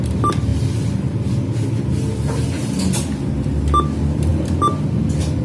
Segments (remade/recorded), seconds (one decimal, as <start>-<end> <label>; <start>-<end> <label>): 0.0-5.4 recorded